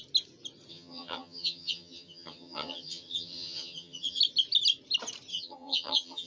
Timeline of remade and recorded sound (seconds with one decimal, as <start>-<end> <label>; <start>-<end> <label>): 0.0-0.7 recorded; 0.7-4.2 remade; 4.2-5.3 recorded; 5.3-6.3 remade